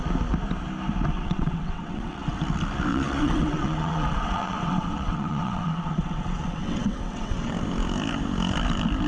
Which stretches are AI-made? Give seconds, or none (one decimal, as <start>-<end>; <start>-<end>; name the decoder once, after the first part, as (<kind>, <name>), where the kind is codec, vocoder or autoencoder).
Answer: 1.1-2.4 (vocoder, WaveNeXt); 2.9-7.5